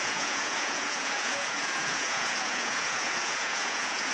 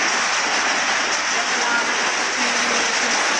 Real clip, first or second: second